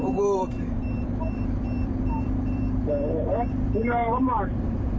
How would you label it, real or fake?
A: fake